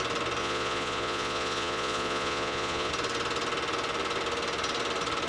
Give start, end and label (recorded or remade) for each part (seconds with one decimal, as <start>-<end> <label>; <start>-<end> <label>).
0.0-0.4 recorded; 0.4-2.9 remade; 2.9-5.3 recorded